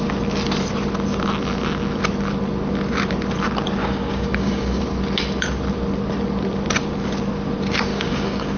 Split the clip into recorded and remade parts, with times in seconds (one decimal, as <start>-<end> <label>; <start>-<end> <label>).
0.0-3.8 recorded; 3.8-4.8 remade; 4.8-7.9 recorded; 7.9-8.6 remade